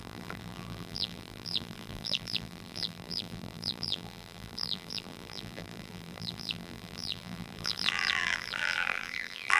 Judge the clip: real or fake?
fake